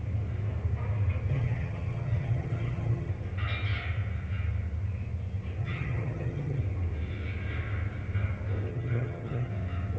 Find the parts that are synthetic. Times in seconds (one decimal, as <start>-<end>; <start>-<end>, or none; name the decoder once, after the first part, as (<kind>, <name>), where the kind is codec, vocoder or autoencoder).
1.3-3.1 (vocoder, HiFi-GAN); 5.6-6.6; 8.7-9.5